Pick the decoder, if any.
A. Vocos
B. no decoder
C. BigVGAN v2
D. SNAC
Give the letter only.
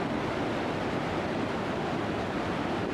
B